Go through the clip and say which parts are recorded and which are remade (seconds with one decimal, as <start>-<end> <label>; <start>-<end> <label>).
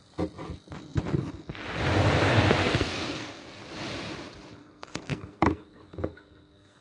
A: 0.0-2.6 recorded; 2.6-3.6 remade; 3.6-4.6 recorded; 4.6-6.8 remade